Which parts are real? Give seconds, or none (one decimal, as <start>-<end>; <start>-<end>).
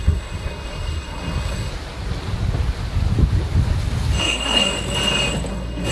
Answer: 1.7-4.2; 4.7-5.5